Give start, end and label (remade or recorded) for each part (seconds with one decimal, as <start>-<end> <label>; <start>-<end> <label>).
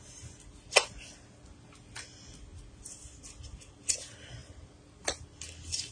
0.0-2.5 recorded; 2.5-3.8 remade; 3.8-5.9 recorded